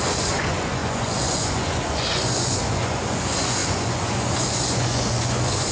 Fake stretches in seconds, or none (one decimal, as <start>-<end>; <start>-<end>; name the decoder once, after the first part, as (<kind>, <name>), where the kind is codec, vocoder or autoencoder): 0.0-5.7 (vocoder, Vocos)